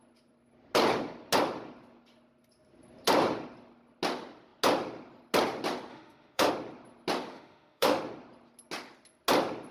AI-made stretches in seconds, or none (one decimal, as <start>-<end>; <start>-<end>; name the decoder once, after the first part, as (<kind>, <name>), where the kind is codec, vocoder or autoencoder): 5.9-6.5 (autoencoder, DAC-VAE); 7.3-8.0